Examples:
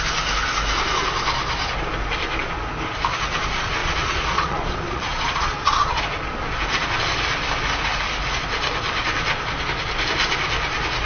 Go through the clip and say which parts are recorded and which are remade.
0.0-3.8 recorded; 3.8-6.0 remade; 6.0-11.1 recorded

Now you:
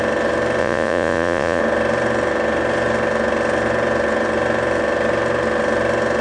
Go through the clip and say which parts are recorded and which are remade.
0.0-0.6 recorded; 0.6-1.6 remade; 1.6-6.2 recorded

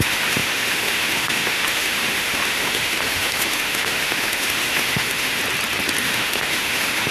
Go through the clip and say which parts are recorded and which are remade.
0.0-5.4 remade; 5.4-6.0 recorded; 6.0-7.1 remade

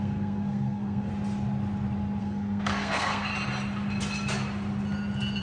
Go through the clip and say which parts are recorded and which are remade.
0.0-1.1 remade; 1.1-2.2 recorded; 2.2-3.3 remade; 3.3-5.4 recorded